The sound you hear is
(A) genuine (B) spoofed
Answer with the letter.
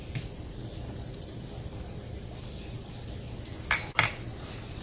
A